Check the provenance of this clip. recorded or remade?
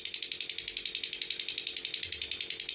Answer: recorded